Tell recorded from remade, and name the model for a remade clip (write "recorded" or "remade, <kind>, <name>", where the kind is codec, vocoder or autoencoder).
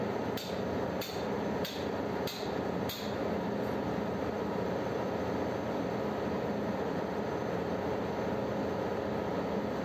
recorded